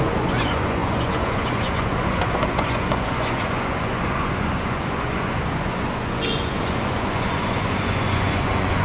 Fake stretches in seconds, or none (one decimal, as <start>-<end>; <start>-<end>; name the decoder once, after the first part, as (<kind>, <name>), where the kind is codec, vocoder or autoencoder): 0.0-8.8 (vocoder, Vocos)